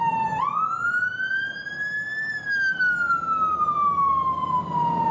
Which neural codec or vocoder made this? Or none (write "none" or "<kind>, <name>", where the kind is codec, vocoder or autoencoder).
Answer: none